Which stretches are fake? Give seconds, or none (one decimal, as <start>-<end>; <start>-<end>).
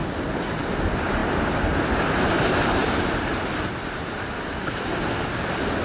1.2-2.4; 2.8-5.3